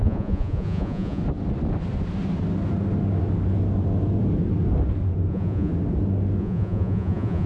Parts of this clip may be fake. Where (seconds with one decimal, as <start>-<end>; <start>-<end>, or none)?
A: 0.0-1.2; 5.3-5.7; 6.4-7.5